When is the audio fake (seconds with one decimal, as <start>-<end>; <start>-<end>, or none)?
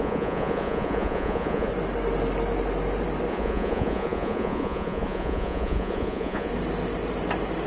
0.0-1.7; 3.3-6.5